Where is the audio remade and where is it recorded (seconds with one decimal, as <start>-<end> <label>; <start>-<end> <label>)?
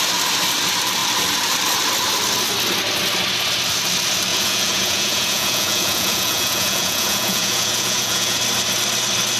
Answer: 0.0-4.3 recorded; 4.3-8.4 remade; 8.4-9.4 recorded